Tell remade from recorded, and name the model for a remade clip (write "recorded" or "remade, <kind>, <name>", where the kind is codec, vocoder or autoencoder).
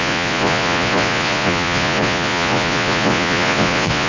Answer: remade, vocoder, Vocos